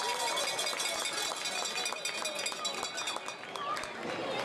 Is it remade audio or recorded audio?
recorded